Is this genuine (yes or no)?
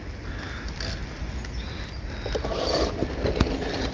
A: yes